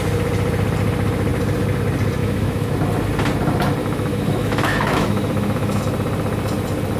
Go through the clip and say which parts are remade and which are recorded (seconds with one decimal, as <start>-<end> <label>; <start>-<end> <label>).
0.0-2.2 recorded; 2.2-2.7 remade; 2.7-3.8 recorded; 3.8-5.8 remade; 5.8-7.0 recorded